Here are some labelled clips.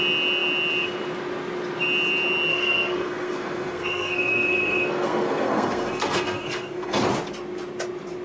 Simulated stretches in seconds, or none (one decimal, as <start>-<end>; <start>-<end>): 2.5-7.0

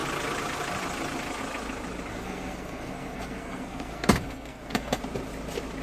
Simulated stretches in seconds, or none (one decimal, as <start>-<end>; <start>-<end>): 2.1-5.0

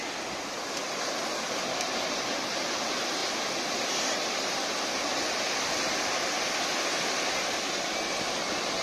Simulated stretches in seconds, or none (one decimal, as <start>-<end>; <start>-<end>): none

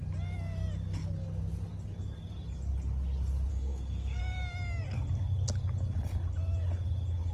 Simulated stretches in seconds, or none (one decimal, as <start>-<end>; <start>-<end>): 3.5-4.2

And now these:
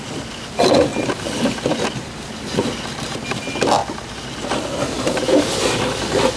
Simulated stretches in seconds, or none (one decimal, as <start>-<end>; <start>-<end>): none

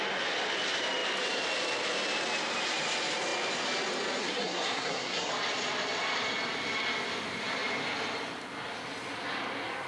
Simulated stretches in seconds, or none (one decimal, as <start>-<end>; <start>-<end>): 4.2-5.3

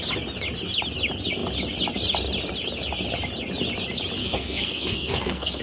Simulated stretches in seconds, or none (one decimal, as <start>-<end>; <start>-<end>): 4.2-5.6

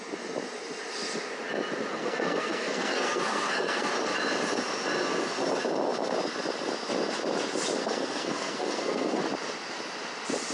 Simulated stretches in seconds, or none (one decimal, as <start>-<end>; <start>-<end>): 1.9-3.9; 7.8-9.2